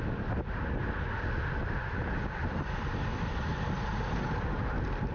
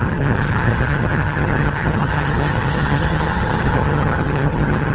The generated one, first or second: second